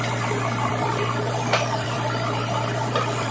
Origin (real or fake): fake